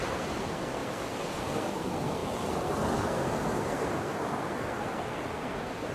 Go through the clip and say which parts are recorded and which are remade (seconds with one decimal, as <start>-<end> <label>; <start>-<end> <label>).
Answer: 0.0-5.9 remade